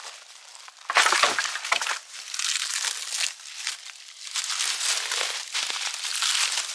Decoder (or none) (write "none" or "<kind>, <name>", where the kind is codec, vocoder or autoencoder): none